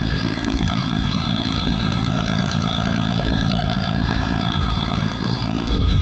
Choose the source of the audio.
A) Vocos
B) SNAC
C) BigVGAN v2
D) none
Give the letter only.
B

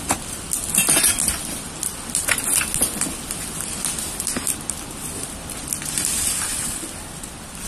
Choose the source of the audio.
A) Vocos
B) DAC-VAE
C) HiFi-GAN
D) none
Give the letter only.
D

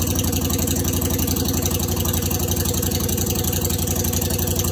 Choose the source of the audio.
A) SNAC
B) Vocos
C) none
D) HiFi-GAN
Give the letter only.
C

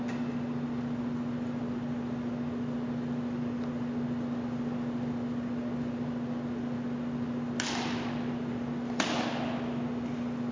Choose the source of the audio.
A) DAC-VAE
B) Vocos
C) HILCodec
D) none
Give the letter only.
D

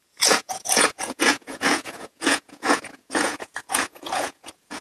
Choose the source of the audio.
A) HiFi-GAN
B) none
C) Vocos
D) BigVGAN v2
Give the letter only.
C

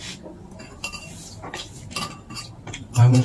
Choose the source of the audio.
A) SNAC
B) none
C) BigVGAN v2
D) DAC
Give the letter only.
B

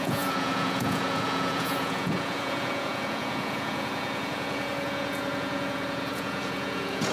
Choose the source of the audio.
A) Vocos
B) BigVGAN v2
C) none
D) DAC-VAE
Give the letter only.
A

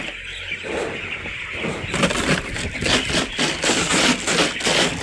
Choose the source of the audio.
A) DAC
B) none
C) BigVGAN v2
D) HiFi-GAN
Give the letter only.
B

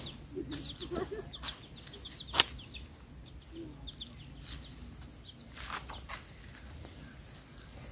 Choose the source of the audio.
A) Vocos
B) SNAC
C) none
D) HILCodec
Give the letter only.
C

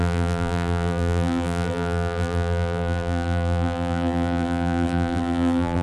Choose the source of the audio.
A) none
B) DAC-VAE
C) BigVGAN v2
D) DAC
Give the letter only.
C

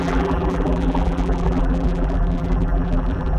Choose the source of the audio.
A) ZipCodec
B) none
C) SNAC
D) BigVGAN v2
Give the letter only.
D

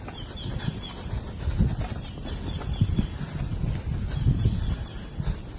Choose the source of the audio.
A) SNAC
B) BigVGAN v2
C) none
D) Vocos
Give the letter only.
C